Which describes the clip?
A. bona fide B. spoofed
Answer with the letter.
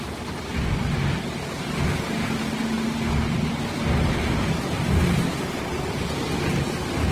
A